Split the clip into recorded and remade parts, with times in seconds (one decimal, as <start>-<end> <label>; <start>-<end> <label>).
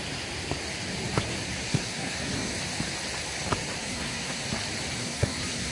0.0-1.7 recorded; 1.7-2.5 remade; 2.5-3.8 recorded; 3.8-4.4 remade; 4.4-5.0 recorded; 5.0-5.7 remade